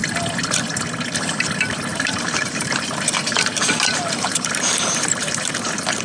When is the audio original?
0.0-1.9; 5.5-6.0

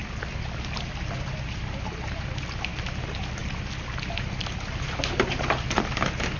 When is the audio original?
3.0-6.4

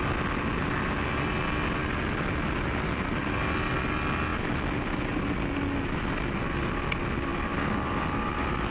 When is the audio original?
0.0-8.7

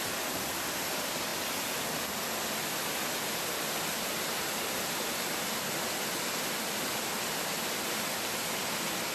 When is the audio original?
0.0-9.1

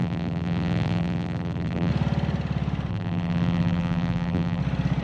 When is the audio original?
1.9-2.9; 4.6-5.0